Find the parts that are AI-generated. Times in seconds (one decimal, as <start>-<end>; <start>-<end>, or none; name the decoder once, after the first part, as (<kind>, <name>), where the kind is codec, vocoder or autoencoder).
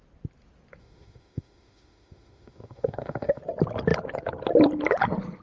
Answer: 0.8-3.4 (autoencoder, DAC-VAE)